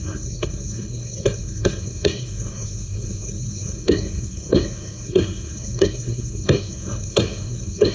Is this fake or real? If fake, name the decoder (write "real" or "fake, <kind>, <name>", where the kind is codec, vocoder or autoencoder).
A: fake, codec, SNAC